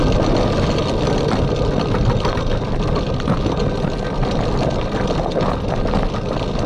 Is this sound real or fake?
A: real